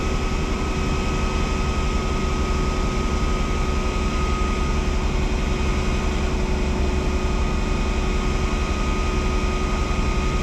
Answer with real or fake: real